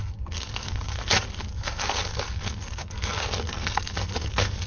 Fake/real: fake